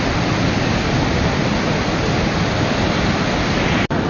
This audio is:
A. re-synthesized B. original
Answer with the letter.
B